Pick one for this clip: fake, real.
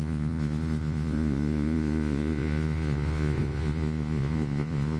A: fake